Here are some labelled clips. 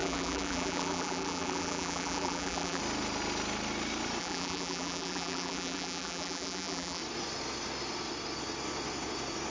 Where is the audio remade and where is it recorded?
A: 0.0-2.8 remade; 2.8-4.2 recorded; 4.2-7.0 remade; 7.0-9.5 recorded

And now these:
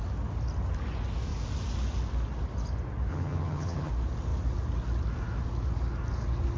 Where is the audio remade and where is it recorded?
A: 0.0-3.1 recorded; 3.1-3.9 remade; 3.9-6.6 recorded